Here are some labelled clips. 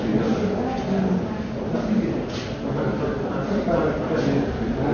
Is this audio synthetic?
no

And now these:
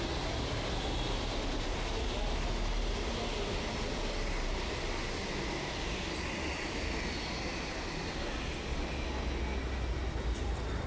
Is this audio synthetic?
no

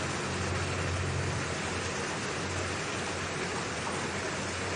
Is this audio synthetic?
no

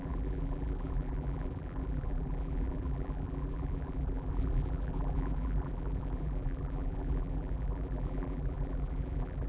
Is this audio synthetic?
yes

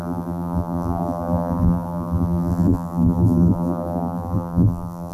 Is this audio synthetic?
yes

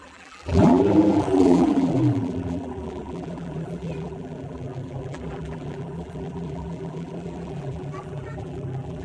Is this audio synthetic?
yes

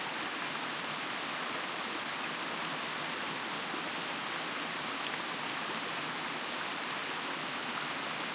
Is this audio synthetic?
no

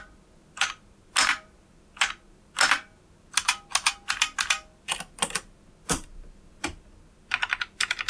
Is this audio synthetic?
no